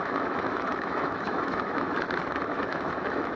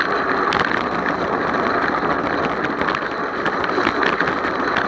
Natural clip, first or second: second